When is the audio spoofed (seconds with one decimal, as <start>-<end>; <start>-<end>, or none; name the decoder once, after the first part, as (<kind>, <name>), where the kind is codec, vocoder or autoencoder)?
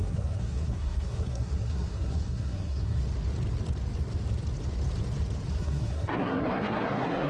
0.0-3.0 (codec, SNAC); 5.5-7.3